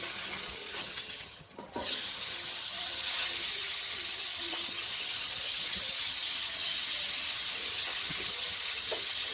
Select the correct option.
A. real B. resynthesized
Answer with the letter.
B